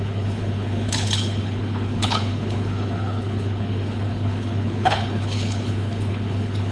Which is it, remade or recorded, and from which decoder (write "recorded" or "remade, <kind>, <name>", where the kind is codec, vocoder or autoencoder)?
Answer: remade, codec, HILCodec